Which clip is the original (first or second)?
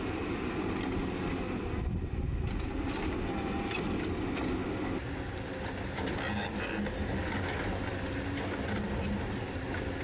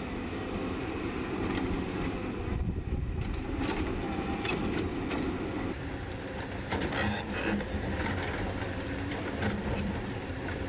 first